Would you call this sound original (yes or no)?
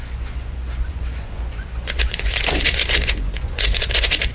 no